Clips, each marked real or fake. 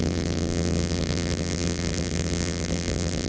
fake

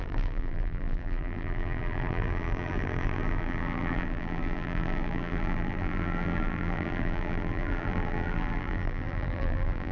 fake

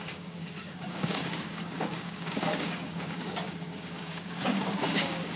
fake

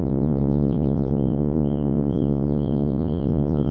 fake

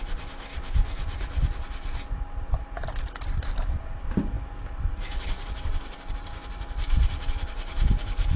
real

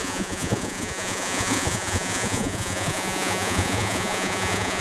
fake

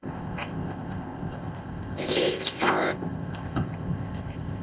fake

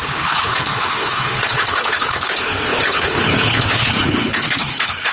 fake